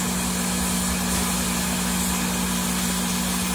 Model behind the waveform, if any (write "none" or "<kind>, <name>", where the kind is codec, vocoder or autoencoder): none